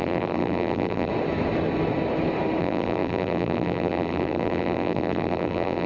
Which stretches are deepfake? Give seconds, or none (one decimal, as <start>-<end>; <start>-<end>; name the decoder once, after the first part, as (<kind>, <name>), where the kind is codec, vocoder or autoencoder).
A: 0.0-1.1 (vocoder, BigVGAN v2); 2.6-5.9